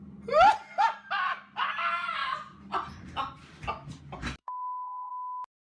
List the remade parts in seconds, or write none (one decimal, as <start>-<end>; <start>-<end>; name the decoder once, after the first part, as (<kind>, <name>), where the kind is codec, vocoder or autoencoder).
4.4-5.1 (codec, SNAC)